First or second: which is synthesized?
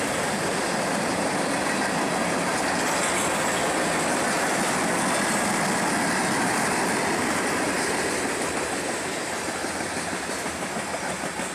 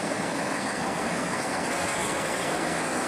second